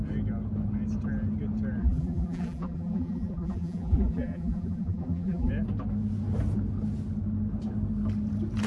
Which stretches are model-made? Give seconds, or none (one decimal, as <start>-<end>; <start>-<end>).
1.8-5.5